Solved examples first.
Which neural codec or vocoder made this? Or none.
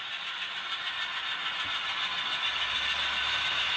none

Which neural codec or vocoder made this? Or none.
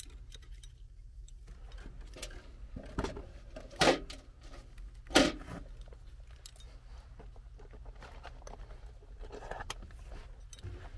none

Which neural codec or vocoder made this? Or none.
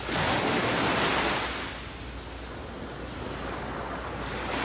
none